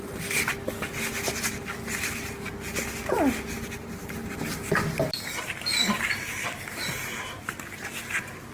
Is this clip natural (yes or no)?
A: yes